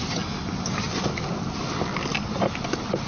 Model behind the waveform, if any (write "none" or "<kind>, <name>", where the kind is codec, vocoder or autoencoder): none